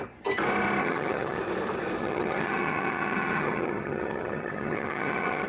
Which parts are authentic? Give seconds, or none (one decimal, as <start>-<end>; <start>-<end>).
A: 0.0-0.8; 1.4-2.0